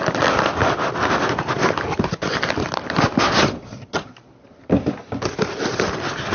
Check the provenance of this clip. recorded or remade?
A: recorded